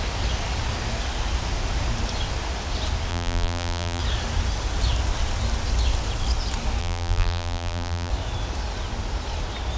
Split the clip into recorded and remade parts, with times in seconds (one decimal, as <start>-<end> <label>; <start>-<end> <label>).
0.0-3.1 recorded; 3.1-4.0 remade; 4.0-6.8 recorded; 6.8-8.1 remade; 8.1-9.8 recorded